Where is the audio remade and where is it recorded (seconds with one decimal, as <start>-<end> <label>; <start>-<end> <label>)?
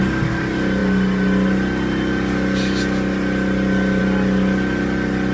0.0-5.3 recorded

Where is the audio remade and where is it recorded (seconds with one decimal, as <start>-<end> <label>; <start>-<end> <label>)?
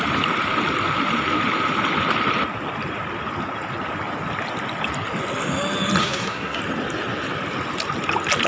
0.0-6.0 recorded; 6.0-6.6 remade; 6.6-8.5 recorded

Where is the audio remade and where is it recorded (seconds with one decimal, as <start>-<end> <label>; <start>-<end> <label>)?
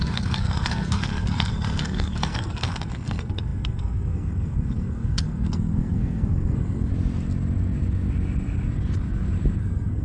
0.0-6.9 remade; 6.9-9.6 recorded; 9.6-10.0 remade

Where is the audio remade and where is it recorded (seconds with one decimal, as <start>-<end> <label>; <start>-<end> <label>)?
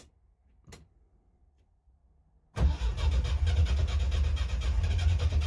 0.0-5.5 recorded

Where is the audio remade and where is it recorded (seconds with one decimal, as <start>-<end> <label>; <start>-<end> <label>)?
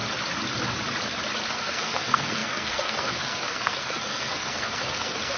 0.0-1.5 recorded; 1.5-5.4 remade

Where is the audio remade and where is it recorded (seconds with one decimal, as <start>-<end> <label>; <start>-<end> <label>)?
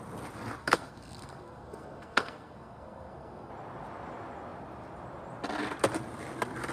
0.0-0.6 recorded; 0.6-3.5 remade; 3.5-6.7 recorded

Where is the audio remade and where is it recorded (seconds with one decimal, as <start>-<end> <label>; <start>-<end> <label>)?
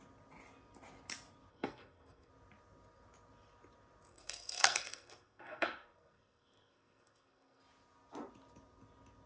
0.0-1.5 recorded; 1.5-2.3 remade; 2.3-4.1 recorded; 4.1-7.6 remade; 7.6-9.3 recorded